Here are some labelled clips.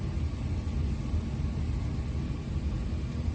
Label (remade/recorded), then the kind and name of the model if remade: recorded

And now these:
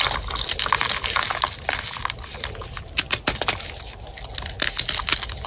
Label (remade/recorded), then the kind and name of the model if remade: recorded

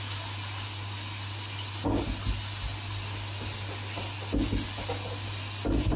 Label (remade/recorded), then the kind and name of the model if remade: recorded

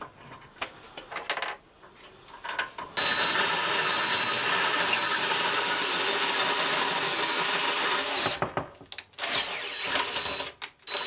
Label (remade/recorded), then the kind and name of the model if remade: recorded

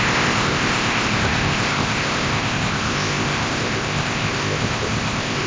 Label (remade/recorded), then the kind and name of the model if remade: remade, codec, ZipCodec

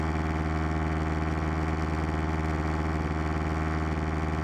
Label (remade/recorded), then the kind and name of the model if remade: recorded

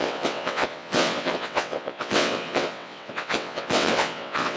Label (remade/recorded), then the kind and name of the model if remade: remade, vocoder, WaveNeXt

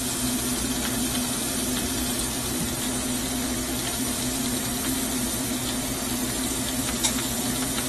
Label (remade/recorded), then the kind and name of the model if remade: recorded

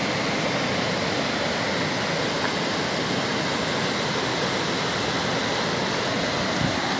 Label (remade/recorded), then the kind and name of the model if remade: recorded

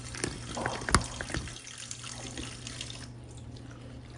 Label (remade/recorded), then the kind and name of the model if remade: recorded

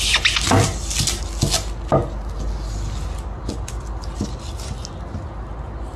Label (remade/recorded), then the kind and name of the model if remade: recorded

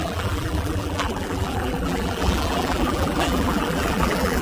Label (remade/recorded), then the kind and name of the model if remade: remade, vocoder, BigVGAN v2